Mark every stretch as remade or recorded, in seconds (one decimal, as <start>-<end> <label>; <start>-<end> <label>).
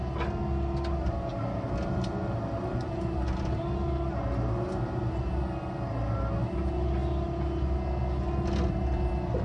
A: 0.0-9.4 recorded